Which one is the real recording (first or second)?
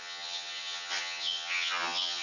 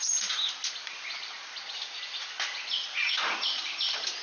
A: second